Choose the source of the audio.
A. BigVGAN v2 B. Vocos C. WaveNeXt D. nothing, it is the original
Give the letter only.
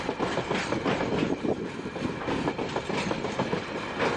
A